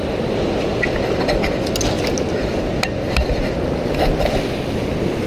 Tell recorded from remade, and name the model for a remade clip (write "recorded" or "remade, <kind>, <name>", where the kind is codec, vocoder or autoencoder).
recorded